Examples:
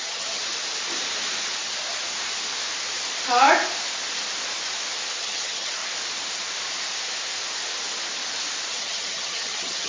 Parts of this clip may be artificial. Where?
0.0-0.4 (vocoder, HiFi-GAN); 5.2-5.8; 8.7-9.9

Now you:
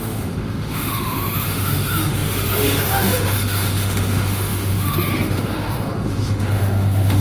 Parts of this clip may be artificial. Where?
0.0-7.2 (autoencoder, DAC-VAE)

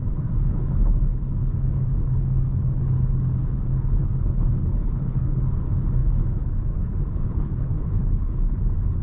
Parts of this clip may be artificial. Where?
0.0-9.0 (codec, HILCodec)

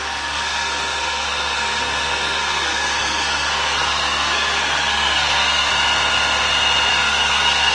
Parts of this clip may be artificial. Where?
0.0-5.7 (codec, SNAC); 6.9-7.7

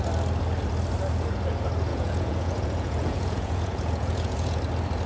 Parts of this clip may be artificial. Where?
1.9-4.6 (vocoder, Vocos)